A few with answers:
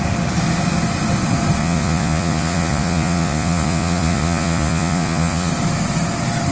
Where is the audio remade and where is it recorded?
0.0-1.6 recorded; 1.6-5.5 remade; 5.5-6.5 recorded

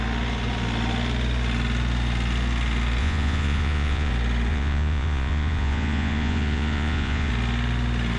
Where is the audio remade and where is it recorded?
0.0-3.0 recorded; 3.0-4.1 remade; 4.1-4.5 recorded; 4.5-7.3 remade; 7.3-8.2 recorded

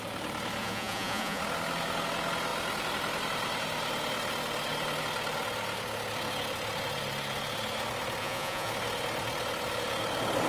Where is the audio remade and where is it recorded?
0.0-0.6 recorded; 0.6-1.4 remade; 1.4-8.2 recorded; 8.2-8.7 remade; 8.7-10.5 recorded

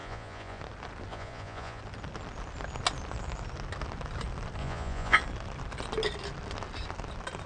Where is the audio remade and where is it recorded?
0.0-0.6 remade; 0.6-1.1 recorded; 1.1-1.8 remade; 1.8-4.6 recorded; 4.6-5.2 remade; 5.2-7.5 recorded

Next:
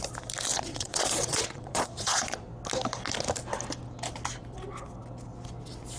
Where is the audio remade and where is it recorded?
0.0-0.5 recorded; 0.5-2.5 remade; 2.5-6.0 recorded

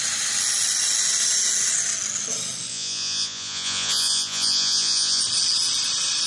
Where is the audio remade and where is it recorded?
0.0-2.7 recorded; 2.7-5.2 remade; 5.2-6.3 recorded